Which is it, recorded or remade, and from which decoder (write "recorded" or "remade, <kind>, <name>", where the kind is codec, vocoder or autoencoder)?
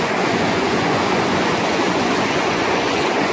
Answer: remade, vocoder, Vocos